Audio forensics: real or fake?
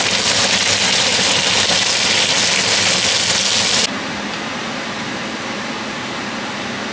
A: real